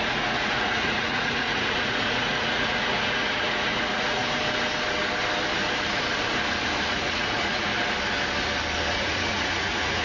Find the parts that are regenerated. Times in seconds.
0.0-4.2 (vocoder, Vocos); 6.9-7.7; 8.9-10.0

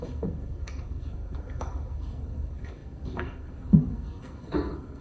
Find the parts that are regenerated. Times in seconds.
0.0-5.0 (codec, SNAC)

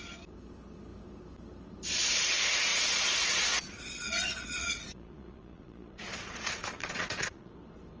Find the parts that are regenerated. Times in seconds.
2.7-7.5 (vocoder, Vocos)

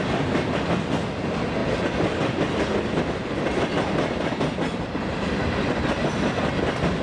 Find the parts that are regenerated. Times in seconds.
none

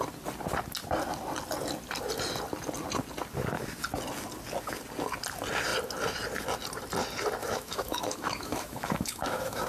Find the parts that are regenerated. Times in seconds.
7.4-9.7 (autoencoder, DAC-VAE)

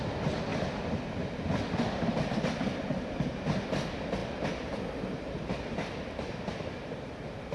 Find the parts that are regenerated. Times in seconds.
none

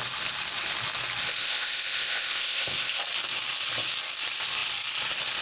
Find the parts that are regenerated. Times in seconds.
1.2-3.0 (codec, ZipCodec)